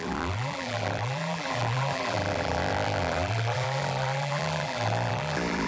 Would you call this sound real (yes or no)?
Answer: no